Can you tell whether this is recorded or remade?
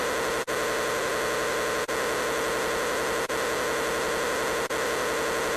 recorded